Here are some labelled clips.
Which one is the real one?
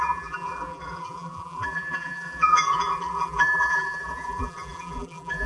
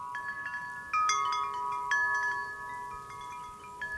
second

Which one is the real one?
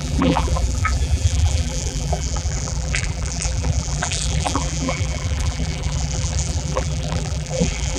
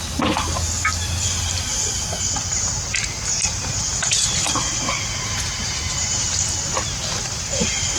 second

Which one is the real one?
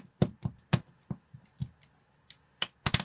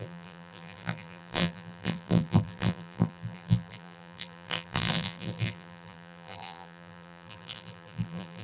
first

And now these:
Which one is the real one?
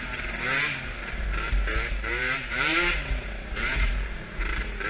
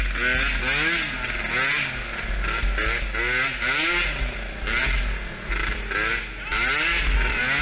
second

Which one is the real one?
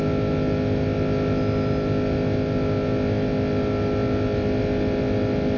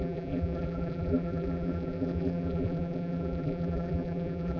first